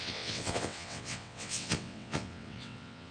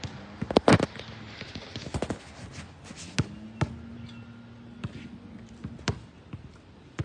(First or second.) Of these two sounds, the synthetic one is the first